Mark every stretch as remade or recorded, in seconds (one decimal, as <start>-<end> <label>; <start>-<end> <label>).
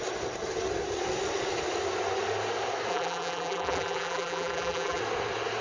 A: 0.0-2.9 recorded; 2.9-5.0 remade; 5.0-5.6 recorded